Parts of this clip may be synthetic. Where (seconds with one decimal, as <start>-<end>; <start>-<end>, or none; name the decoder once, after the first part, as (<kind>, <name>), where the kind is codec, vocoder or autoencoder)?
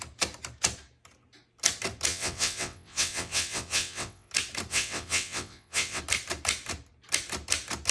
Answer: 2.1-4.3 (vocoder, WaveNeXt); 4.7-6.0